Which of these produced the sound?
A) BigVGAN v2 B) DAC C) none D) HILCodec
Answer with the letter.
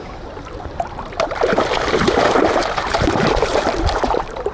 A